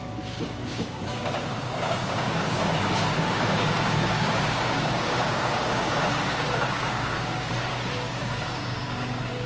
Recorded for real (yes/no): no